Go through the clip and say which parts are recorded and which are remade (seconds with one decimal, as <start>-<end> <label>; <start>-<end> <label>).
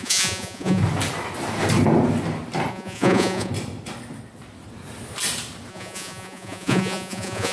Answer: 0.0-0.8 remade; 0.8-2.7 recorded; 2.7-3.5 remade; 3.5-5.7 recorded; 5.7-7.5 remade